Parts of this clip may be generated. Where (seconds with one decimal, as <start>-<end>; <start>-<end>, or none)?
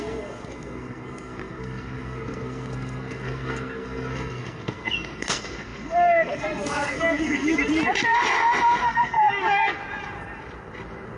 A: 0.0-7.7; 8.8-9.8